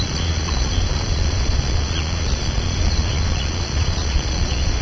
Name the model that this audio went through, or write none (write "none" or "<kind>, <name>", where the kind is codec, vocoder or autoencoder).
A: vocoder, Vocos